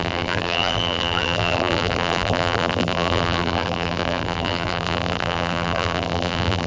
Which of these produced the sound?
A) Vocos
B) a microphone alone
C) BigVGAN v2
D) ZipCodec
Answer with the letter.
C